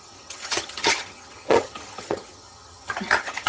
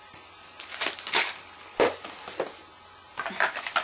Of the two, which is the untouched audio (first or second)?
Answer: second